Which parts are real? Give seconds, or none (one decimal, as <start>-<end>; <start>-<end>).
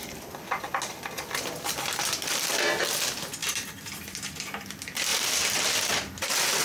0.0-5.1; 5.7-6.6